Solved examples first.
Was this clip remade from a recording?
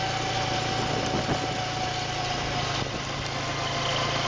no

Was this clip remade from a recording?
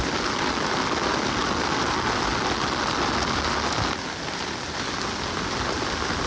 no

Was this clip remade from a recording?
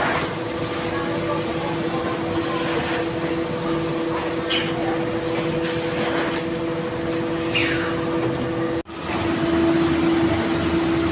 no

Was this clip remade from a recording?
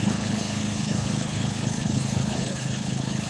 yes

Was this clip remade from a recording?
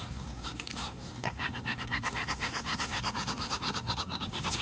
yes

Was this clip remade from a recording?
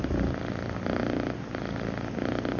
no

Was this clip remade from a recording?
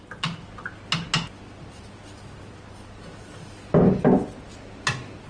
no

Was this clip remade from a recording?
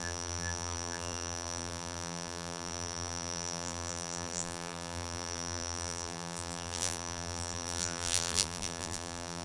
yes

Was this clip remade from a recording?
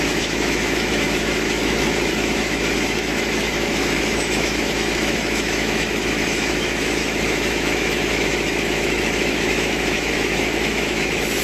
yes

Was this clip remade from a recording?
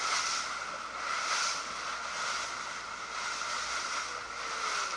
no